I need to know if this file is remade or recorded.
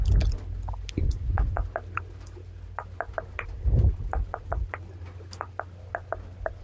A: recorded